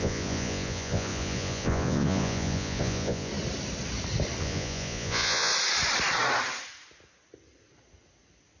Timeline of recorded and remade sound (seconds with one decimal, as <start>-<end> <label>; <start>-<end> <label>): 0.0-3.3 remade; 3.3-4.4 recorded; 4.4-5.5 remade; 5.5-8.6 recorded